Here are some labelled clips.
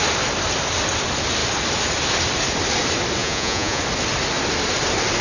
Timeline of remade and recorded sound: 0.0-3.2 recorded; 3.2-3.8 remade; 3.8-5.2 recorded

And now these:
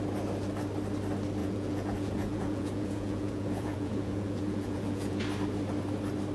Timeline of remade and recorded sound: 0.0-1.4 recorded; 1.4-5.2 remade; 5.2-6.3 recorded

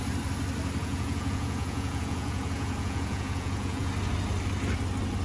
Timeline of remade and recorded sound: 0.0-0.8 recorded; 0.8-3.9 remade; 3.9-5.2 recorded

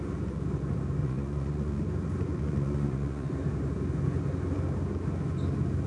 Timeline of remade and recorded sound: 0.0-1.0 recorded; 1.0-1.8 remade; 1.8-2.3 recorded; 2.3-3.3 remade; 3.3-5.9 recorded

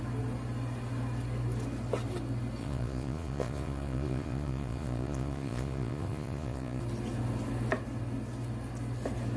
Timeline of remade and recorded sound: 0.0-2.6 recorded; 2.6-6.8 remade; 6.8-9.4 recorded